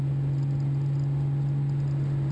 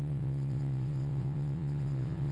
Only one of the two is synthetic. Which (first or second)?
second